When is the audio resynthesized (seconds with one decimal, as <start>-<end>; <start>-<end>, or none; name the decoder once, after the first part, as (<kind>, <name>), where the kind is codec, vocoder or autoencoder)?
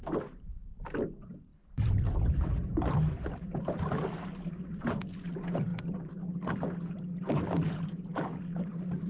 0.0-5.7 (vocoder, BigVGAN v2); 6.8-9.1